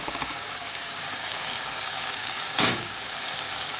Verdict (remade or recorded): remade